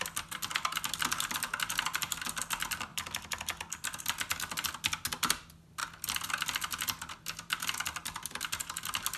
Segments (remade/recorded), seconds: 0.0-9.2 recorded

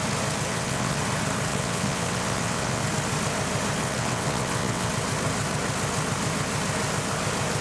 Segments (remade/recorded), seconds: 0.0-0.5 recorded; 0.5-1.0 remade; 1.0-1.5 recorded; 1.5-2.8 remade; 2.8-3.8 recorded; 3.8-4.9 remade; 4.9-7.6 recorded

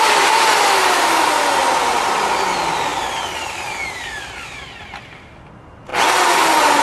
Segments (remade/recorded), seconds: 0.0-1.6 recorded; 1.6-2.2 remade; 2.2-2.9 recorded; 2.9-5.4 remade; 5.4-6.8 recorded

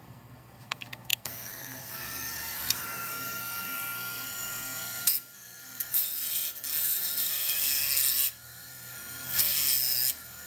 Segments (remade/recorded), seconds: 0.0-10.5 remade

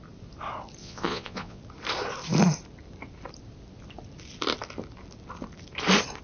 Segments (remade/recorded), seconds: 0.0-0.8 recorded; 0.8-1.6 remade; 1.6-6.2 recorded